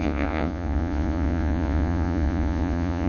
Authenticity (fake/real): fake